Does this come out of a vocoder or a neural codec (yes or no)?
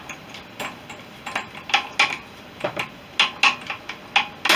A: no